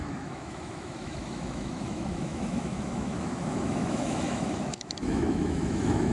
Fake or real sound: fake